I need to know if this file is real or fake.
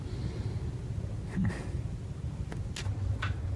real